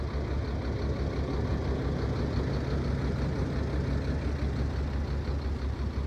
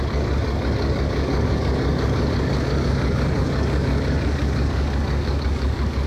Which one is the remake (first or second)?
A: second